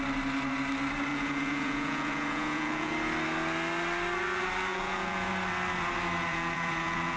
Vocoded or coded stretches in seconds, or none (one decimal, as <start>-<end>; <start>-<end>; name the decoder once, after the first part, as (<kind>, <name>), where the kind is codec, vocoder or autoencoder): 1.1-2.9 (vocoder, Vocos); 4.7-5.3; 6.3-7.2